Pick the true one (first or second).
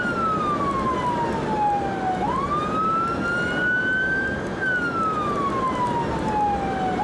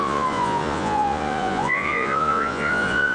first